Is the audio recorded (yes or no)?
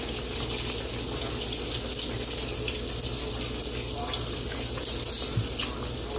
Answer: yes